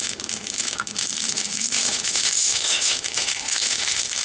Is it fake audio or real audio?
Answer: fake